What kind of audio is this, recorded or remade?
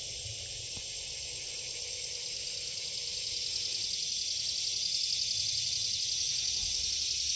recorded